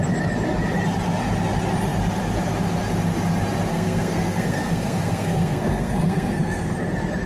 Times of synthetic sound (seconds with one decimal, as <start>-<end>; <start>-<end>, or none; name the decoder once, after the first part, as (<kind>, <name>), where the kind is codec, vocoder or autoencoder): 3.7-6.7 (codec, SNAC)